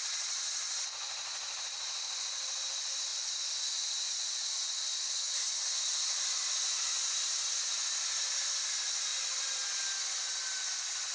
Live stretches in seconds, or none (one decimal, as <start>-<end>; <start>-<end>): 0.0-11.1